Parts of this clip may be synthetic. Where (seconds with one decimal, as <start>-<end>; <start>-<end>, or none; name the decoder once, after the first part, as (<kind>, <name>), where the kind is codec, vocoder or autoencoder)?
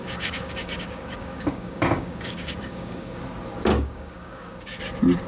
0.0-3.2 (codec, DAC); 3.7-4.8